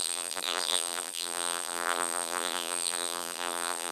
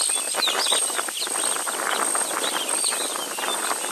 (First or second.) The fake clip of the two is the first